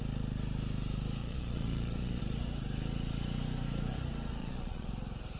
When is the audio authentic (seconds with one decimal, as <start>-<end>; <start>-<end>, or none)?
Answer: 0.0-1.2; 2.2-4.4; 4.9-5.4